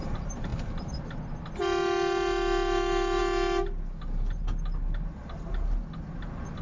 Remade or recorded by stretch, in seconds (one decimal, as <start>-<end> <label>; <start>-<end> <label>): 0.0-6.6 recorded